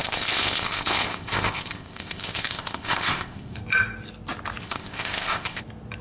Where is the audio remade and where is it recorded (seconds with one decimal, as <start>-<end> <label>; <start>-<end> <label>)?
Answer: 0.0-3.6 remade; 3.6-4.6 recorded; 4.6-5.6 remade; 5.6-6.0 recorded